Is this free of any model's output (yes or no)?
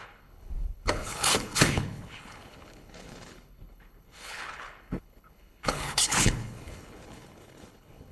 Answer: no